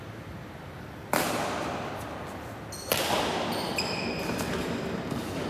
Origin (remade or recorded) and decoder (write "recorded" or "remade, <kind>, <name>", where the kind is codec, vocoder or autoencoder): recorded